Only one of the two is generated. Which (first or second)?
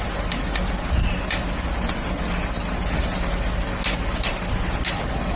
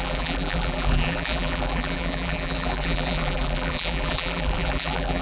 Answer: second